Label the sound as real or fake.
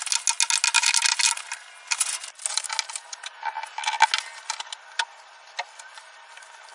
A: real